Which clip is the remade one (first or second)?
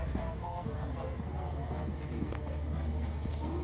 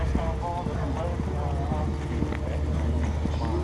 first